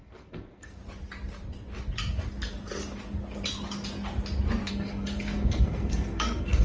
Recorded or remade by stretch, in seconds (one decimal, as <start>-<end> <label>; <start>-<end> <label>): 0.0-0.8 remade; 0.8-4.7 recorded; 4.7-6.6 remade